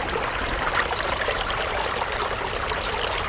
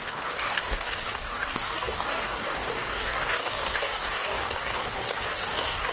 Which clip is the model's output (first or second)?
second